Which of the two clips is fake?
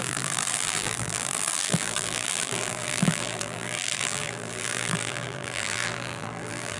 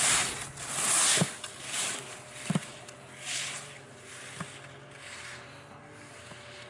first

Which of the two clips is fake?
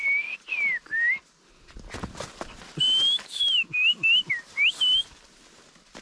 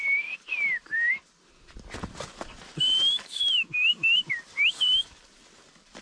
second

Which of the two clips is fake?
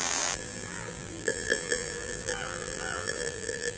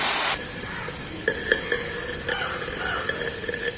first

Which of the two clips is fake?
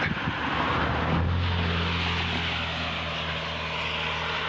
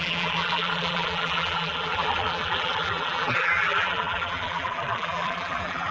second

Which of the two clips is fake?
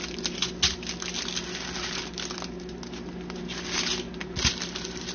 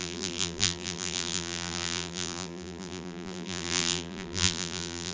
second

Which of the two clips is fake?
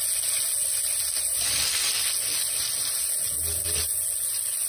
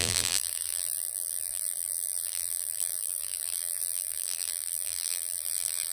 second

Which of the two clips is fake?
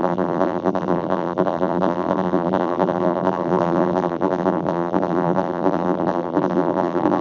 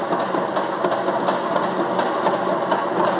first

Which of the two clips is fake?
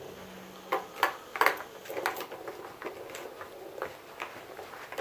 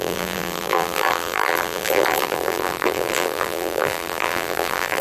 second